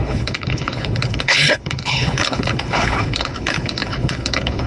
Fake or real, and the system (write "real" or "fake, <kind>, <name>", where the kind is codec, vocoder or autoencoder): fake, codec, HILCodec